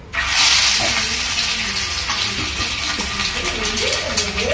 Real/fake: real